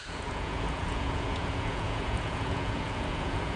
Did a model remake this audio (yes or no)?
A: yes